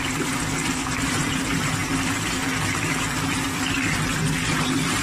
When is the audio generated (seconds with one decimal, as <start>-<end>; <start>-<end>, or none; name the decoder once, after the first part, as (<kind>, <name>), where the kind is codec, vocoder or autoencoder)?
0.8-1.4 (vocoder, BigVGAN v2)